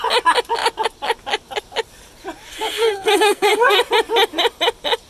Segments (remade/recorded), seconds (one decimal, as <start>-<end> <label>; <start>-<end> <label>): 0.0-2.5 recorded; 2.5-3.8 remade; 3.8-5.1 recorded